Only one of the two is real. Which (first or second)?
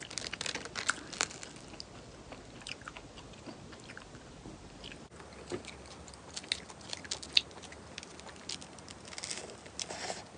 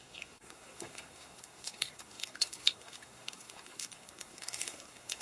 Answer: first